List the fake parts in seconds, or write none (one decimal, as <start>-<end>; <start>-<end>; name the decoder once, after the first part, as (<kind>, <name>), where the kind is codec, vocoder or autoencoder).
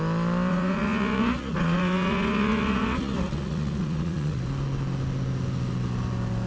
0.5-4.4 (vocoder, Vocos)